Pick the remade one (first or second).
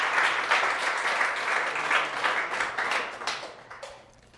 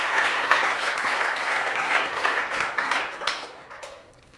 second